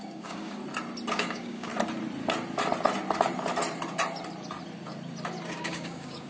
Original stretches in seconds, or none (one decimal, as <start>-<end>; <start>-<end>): 0.6-1.1; 1.7-5.5